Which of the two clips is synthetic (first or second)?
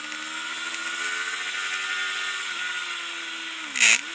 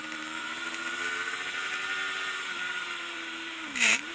second